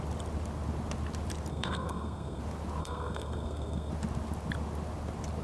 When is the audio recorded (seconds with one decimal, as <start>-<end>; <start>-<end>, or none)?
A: 0.0-1.5; 2.4-2.8; 3.9-5.4

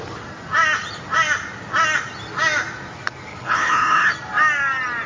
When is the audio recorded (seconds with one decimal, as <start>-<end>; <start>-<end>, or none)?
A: 0.0-3.3; 4.1-5.1